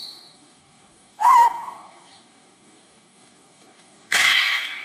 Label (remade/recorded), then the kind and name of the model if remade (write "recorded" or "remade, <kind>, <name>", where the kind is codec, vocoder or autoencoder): remade, codec, DAC